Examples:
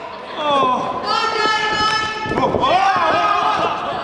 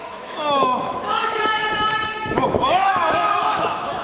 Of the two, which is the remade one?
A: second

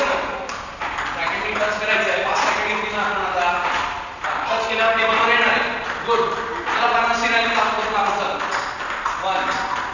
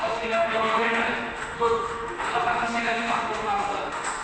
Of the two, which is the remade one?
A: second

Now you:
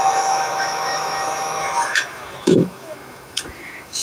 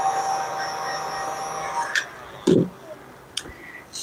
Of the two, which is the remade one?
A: first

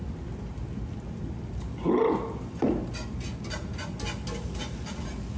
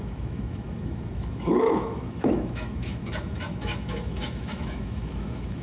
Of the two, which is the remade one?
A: second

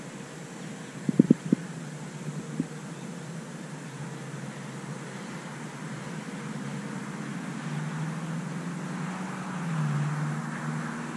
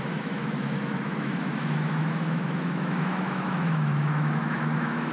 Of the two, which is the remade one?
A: second